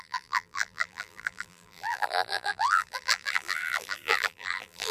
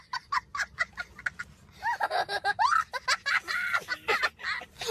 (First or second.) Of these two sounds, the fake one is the first